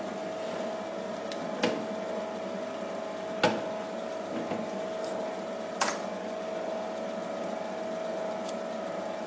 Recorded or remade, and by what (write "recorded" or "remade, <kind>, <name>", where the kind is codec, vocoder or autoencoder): recorded